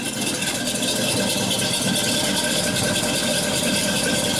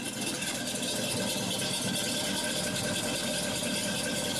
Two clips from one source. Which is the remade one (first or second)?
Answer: first